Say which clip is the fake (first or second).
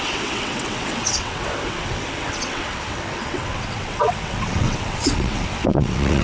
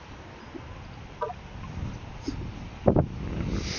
first